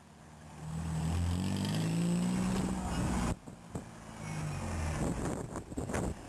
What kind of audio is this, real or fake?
real